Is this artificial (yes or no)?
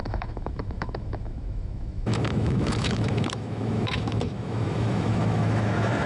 yes